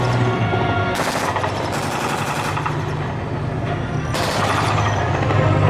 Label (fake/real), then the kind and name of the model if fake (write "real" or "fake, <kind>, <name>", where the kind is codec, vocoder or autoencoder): real